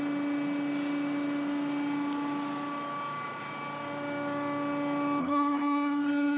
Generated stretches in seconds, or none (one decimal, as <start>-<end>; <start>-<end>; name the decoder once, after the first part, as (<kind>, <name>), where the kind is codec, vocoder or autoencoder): 5.2-6.4 (codec, SNAC)